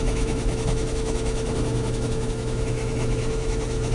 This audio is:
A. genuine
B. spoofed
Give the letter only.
B